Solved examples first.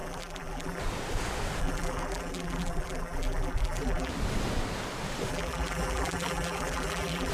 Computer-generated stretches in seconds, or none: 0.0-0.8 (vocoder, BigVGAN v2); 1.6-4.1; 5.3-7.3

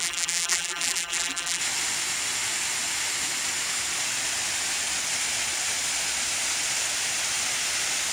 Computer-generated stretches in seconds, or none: 0.0-1.6 (vocoder, BigVGAN v2)

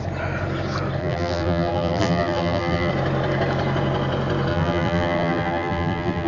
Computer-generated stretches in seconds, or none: 1.0-2.9 (vocoder, BigVGAN v2); 4.5-6.3

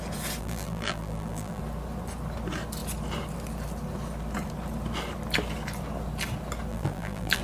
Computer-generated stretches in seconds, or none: 0.4-1.6 (vocoder, BigVGAN v2); 6.7-7.4

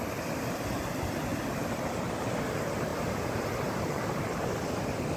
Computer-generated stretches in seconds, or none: 2.9-4.6 (vocoder, BigVGAN v2)

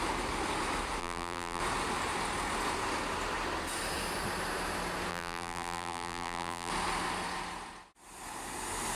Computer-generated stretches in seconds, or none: 1.0-1.6 (vocoder, BigVGAN v2); 5.1-6.7